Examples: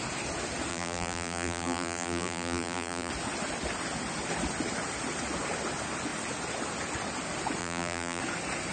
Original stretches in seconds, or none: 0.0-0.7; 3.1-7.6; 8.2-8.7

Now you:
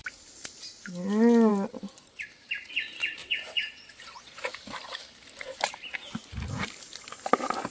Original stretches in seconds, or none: 0.0-3.2; 4.5-7.7

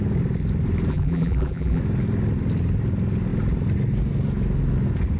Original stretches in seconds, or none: 0.0-0.9; 1.8-5.2

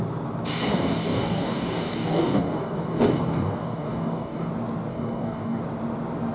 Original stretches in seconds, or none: 0.0-0.7; 4.5-4.9; 5.6-6.3

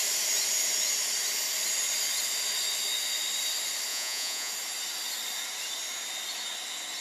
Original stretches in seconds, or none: 0.0-3.9; 4.5-7.0

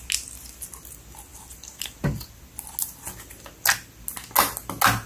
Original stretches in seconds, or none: 0.0-5.1

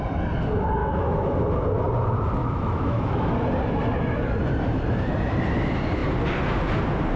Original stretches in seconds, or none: 0.0-0.8; 1.3-2.4; 3.3-7.2